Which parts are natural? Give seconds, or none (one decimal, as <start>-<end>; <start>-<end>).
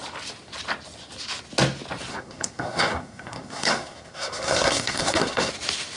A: 0.0-2.1; 5.5-6.0